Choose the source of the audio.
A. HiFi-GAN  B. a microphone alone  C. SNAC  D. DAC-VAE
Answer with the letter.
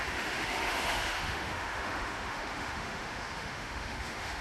D